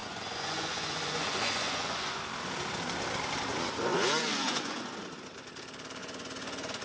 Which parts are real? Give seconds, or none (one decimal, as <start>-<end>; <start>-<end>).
2.2-3.9; 4.9-6.0